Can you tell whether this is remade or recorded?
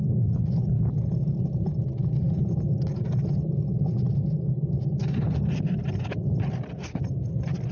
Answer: recorded